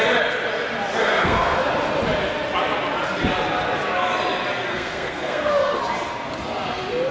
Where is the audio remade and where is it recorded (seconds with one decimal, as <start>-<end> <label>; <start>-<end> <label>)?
0.0-1.0 recorded; 1.0-1.7 remade; 1.7-4.7 recorded; 4.7-5.8 remade; 5.8-7.1 recorded